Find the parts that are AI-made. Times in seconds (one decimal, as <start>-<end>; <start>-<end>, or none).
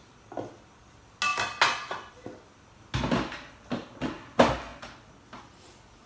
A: none